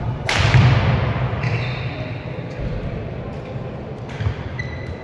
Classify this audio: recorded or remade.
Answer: remade